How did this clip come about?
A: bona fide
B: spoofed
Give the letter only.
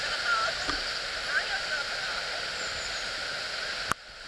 A